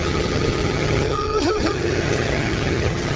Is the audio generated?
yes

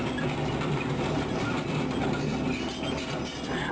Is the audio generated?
no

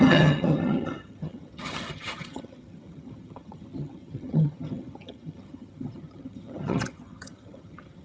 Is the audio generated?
yes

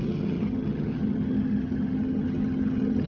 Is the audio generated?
yes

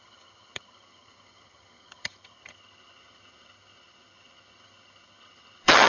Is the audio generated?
yes